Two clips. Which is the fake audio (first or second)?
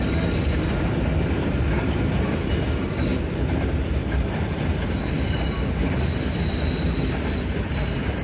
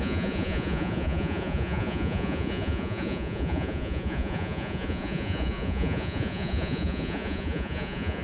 second